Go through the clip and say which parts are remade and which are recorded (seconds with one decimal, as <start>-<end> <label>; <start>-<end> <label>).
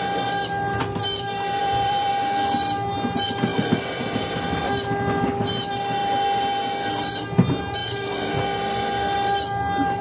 0.0-1.6 recorded; 1.6-2.1 remade; 2.1-3.5 recorded; 3.5-4.6 remade; 4.6-7.8 recorded; 7.8-8.3 remade; 8.3-10.0 recorded